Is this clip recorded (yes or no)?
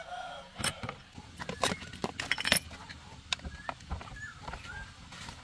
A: yes